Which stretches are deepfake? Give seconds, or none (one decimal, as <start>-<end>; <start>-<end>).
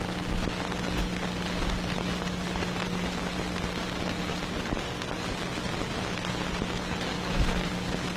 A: 7.1-7.7